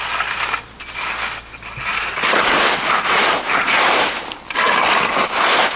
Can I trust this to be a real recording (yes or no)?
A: yes